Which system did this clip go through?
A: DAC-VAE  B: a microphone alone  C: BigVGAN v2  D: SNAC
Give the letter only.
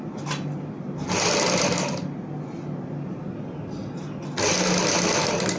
B